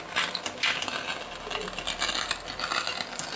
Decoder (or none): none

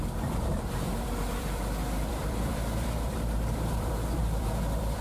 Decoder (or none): vocoder, BigVGAN v2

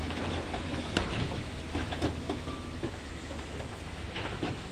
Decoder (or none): autoencoder, DAC-VAE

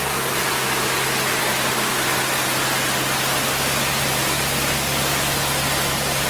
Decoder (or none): none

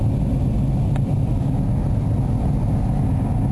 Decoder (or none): none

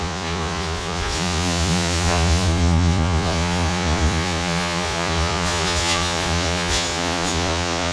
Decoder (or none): vocoder, Vocos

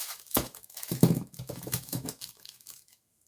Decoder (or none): autoencoder, DAC-VAE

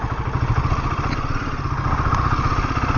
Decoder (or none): none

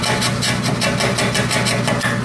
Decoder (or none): none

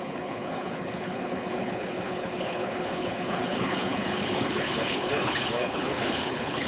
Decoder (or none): codec, HILCodec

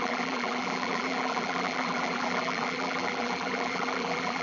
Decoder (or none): vocoder, BigVGAN v2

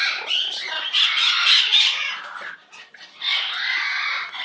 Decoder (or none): none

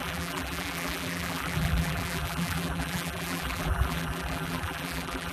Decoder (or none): vocoder, BigVGAN v2